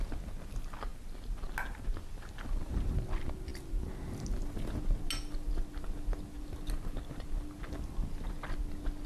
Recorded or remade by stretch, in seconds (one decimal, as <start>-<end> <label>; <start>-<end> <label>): 0.0-9.1 recorded